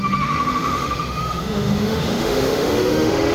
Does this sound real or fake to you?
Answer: fake